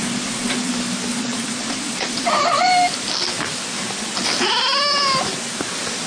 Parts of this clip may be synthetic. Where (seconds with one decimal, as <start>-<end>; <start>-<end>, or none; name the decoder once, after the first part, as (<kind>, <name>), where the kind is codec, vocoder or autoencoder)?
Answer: 0.0-0.7 (vocoder, Vocos); 1.1-2.7